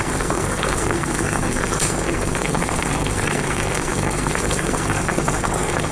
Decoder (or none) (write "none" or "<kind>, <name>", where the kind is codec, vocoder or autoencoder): codec, SNAC